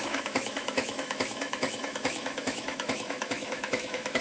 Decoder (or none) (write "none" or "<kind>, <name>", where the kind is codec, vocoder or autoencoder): autoencoder, DAC-VAE